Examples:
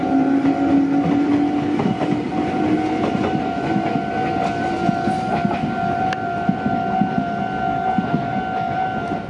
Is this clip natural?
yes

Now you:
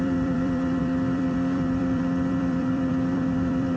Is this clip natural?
no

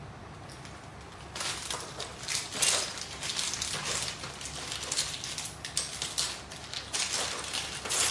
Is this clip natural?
yes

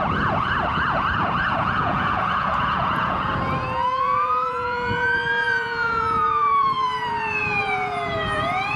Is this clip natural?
no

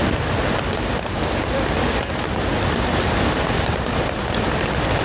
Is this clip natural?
yes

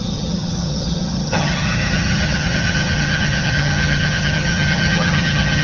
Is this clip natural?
no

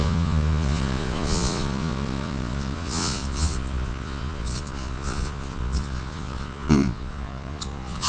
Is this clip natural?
no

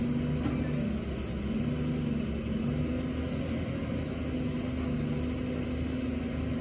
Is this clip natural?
yes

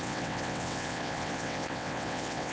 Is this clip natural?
no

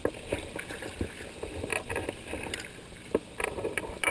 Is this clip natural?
yes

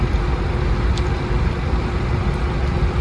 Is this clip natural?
yes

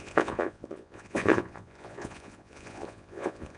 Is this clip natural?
no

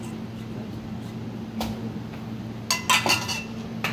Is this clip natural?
yes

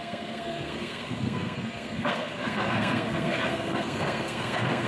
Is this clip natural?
no